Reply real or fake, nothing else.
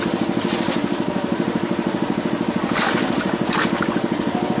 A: real